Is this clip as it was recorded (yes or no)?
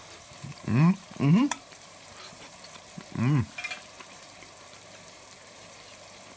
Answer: no